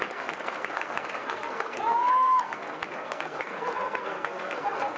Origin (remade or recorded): remade